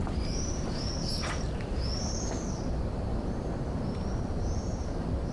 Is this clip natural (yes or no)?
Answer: no